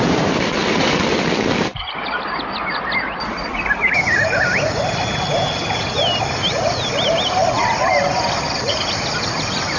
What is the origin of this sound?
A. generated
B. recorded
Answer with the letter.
B